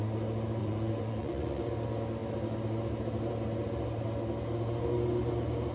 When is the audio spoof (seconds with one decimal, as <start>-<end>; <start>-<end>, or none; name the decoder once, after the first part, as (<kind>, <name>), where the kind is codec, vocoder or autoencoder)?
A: 0.6-1.6 (vocoder, Vocos)